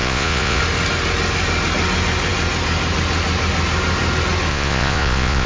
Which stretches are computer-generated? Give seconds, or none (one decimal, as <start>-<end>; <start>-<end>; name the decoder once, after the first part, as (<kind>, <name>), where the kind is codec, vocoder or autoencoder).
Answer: 0.0-0.6 (vocoder, Vocos); 4.5-5.5